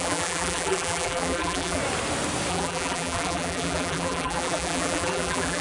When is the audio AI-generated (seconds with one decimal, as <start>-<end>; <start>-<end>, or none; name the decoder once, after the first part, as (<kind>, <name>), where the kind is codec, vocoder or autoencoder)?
0.0-1.8 (vocoder, BigVGAN v2); 2.5-5.6